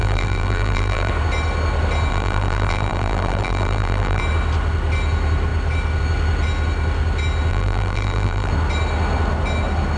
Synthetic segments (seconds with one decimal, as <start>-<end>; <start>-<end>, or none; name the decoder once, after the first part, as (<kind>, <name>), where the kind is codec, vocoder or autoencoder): 0.0-1.1 (vocoder, BigVGAN v2); 2.1-4.2; 7.5-8.5

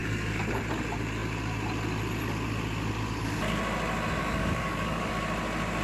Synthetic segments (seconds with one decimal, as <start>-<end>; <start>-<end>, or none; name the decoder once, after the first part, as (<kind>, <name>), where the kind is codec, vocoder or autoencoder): 0.0-0.6 (codec, DAC); 4.2-5.1

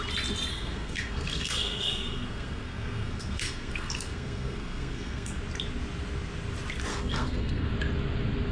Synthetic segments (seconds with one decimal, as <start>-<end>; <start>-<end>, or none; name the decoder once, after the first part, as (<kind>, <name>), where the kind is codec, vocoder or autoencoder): 0.5-5.4 (codec, SNAC); 6.9-7.7